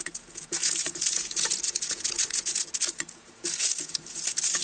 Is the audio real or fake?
fake